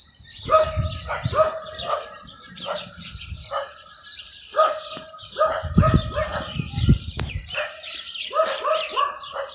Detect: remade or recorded remade